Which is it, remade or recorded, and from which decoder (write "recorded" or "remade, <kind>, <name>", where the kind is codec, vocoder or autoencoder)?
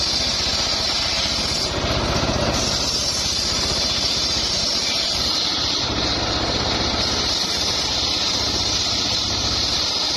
remade, vocoder, BigVGAN v2